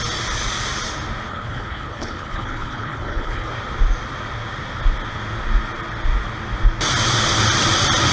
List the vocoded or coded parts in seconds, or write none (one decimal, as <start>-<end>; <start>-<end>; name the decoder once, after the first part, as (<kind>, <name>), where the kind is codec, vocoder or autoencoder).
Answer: 1.3-3.5 (codec, HILCodec)